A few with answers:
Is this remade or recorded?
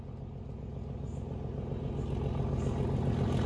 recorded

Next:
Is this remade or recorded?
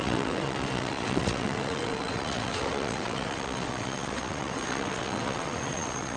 remade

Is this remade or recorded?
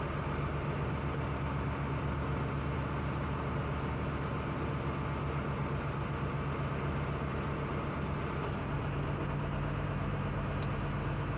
recorded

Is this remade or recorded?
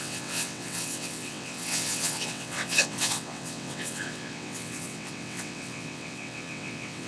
remade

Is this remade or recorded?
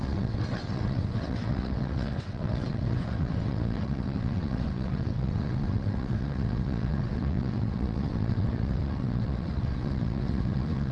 remade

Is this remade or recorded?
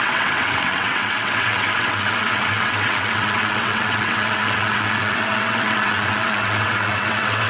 remade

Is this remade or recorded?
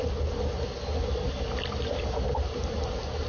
recorded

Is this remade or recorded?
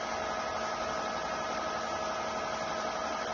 recorded